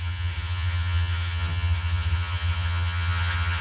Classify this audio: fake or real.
fake